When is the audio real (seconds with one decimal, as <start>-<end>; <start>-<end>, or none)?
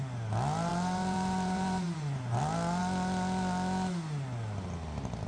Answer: 0.0-0.7; 2.4-5.3